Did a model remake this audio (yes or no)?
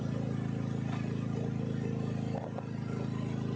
no